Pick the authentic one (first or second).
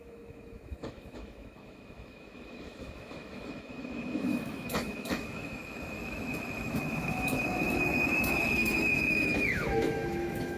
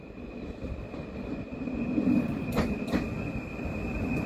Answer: second